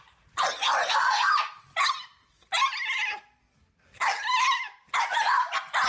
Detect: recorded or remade recorded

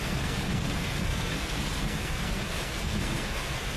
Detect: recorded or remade remade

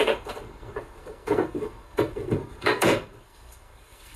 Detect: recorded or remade remade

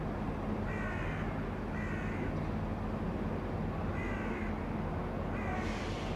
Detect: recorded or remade recorded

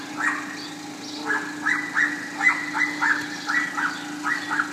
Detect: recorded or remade recorded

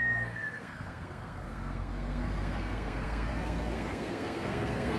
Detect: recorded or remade remade